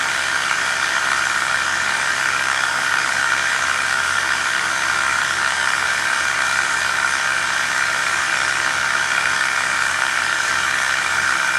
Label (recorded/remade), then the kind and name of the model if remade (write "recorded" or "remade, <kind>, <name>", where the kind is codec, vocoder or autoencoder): remade, codec, DAC